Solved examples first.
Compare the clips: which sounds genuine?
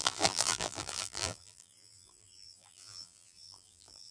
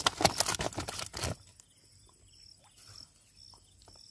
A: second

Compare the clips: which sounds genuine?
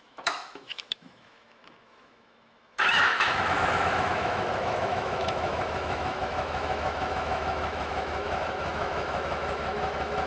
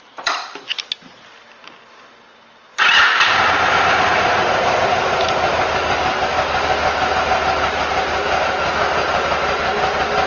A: second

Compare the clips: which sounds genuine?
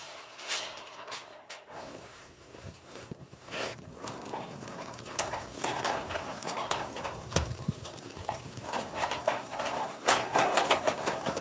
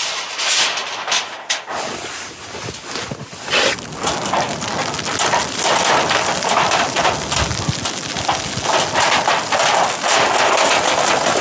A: second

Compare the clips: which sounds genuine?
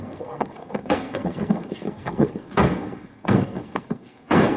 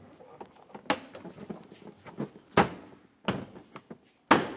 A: second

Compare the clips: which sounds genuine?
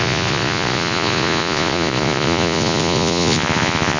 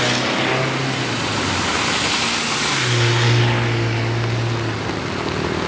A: second